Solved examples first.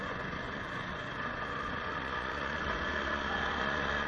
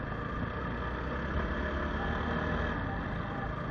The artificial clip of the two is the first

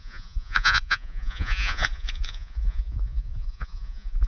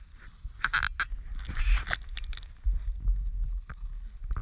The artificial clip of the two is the first